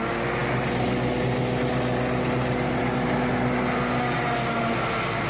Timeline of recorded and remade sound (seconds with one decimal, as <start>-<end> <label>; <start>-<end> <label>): 0.0-5.3 recorded